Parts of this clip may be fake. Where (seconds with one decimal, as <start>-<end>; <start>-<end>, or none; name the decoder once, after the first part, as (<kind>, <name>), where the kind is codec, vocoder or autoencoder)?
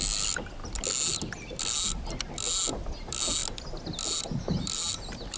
none